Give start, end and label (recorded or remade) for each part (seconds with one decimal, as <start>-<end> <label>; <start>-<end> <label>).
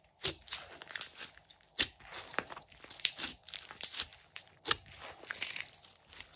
0.0-6.4 recorded